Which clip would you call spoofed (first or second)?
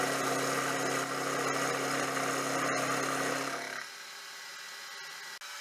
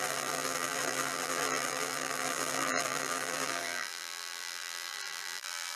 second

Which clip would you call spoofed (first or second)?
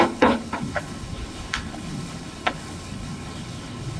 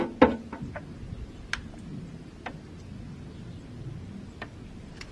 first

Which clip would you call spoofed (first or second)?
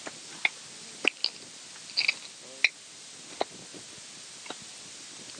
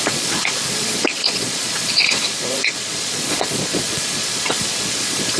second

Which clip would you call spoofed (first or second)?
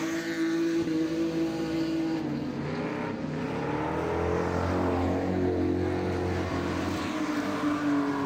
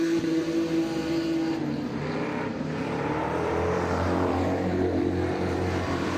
second